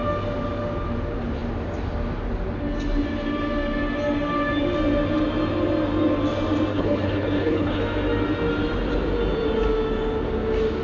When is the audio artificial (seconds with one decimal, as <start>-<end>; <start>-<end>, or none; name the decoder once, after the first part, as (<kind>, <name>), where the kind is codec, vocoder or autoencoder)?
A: 6.7-7.8 (codec, HILCodec)